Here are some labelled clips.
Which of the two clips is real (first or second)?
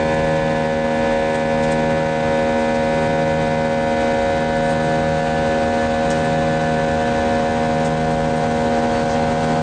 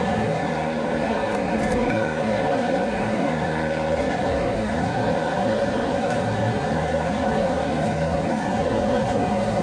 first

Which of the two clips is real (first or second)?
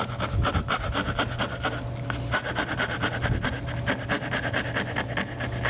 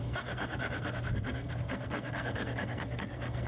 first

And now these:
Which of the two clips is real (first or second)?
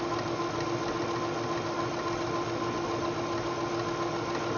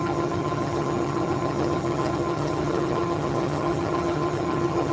first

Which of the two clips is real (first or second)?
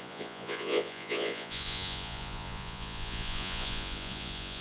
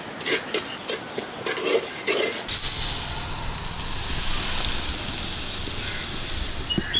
second